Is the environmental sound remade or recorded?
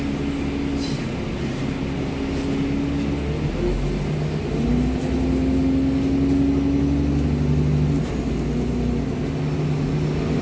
recorded